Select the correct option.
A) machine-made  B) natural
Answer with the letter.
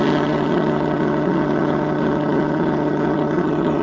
A